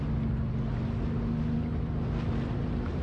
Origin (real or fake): real